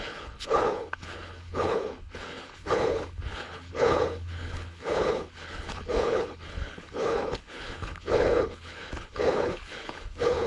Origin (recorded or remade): remade